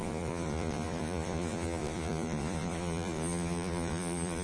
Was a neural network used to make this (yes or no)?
yes